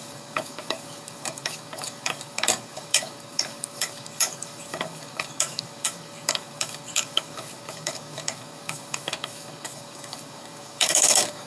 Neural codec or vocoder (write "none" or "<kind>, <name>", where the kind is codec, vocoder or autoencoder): codec, DAC